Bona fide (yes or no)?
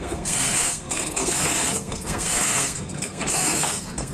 no